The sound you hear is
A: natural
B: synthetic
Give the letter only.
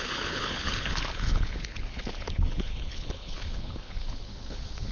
B